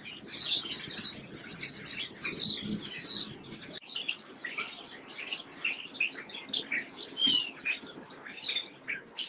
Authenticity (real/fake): real